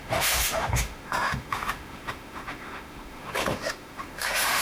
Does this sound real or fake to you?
fake